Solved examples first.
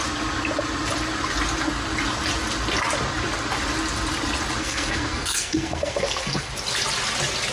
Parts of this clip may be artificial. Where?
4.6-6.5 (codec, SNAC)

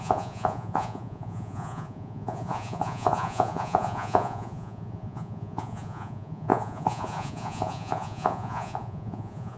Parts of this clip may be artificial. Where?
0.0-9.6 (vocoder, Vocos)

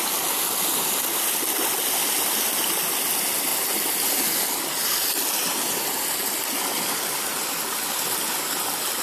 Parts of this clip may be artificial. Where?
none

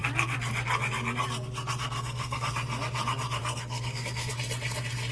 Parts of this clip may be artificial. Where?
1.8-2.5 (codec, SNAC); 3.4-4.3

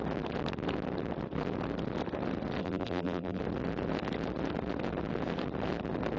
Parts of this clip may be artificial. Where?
2.6-3.4 (vocoder, BigVGAN v2)

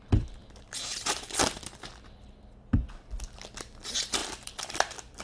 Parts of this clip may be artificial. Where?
0.0-2.8 (vocoder, BigVGAN v2); 3.6-5.2

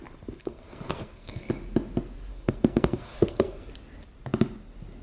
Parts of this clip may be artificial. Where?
0.4-1.5 (codec, SNAC); 2.3-3.7

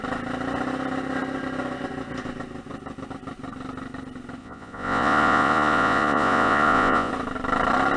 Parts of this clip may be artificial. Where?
4.4-7.1 (vocoder, Vocos)